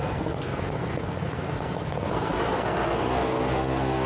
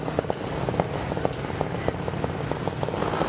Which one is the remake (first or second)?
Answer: first